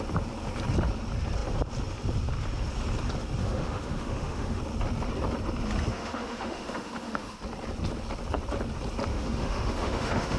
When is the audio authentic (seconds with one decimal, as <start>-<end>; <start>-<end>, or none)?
0.0-3.4; 4.6-5.9; 7.4-9.1